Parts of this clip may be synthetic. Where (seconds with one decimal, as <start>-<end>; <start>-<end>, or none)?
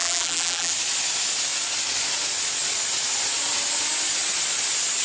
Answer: 0.0-0.7